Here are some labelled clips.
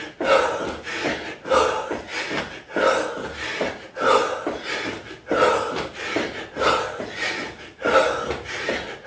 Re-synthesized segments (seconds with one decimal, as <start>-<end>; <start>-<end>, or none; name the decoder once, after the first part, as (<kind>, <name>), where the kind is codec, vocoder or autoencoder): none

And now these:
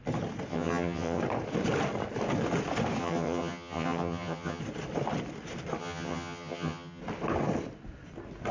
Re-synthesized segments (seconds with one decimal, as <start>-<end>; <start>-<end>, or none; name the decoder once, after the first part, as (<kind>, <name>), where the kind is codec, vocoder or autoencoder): 0.5-1.2 (vocoder, HiFi-GAN); 3.0-4.6; 5.8-7.0

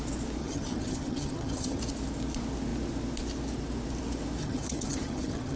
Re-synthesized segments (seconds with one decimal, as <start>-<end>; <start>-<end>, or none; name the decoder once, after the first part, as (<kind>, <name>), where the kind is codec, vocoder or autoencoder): 0.4-1.8 (vocoder, HiFi-GAN); 4.4-5.6